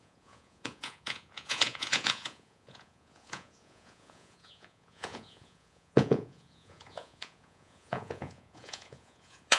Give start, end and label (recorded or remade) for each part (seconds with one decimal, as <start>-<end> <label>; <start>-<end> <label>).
0.0-9.6 remade